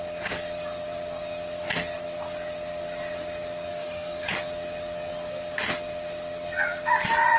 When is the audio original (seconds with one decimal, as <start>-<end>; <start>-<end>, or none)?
0.0-3.7; 4.2-7.4